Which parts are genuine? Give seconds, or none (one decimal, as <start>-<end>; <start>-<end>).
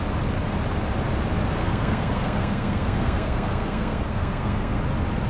0.0-1.6; 4.8-5.3